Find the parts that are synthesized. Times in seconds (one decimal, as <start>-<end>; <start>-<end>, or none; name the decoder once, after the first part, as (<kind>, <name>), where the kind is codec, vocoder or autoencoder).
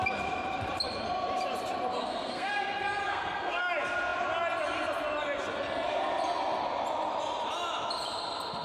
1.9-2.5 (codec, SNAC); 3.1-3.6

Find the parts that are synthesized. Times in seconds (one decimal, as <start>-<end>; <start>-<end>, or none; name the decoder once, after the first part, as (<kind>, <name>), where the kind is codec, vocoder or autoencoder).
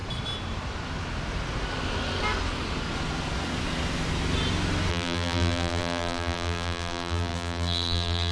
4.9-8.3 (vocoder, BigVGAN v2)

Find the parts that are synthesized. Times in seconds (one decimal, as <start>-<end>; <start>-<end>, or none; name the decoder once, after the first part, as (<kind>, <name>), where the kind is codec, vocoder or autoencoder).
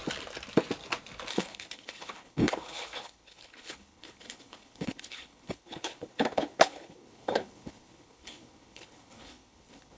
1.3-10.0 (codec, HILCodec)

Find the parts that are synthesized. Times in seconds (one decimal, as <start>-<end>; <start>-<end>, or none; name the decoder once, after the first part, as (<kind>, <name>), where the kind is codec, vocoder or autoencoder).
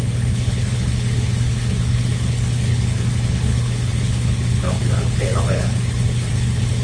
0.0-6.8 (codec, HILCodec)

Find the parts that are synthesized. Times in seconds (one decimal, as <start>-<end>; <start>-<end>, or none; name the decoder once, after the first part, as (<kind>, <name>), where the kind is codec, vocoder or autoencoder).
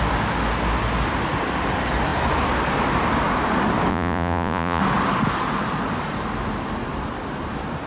3.9-4.8 (vocoder, Vocos)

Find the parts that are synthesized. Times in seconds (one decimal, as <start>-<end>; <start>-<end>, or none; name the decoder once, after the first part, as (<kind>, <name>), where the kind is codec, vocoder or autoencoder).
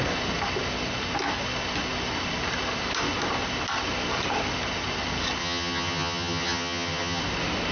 5.4-7.2 (vocoder, HiFi-GAN)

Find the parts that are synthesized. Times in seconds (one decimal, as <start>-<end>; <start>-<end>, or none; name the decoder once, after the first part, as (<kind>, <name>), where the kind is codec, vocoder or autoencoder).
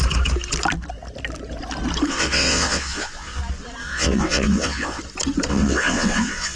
2.1-3.4 (vocoder, WaveNeXt); 3.8-5.0; 5.5-6.6